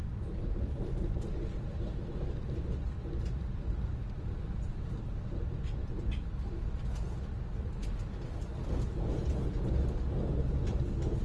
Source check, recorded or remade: recorded